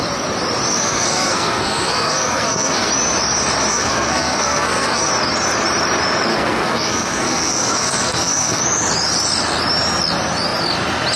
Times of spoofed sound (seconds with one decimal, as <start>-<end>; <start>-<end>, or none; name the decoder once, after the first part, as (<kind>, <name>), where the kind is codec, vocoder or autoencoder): 0.7-2.9 (codec, SNAC); 3.7-5.1; 6.3-8.6